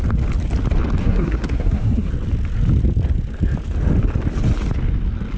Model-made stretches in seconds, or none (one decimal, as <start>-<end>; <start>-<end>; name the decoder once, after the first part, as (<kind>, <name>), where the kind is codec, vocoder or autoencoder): 1.0-2.1 (codec, SNAC)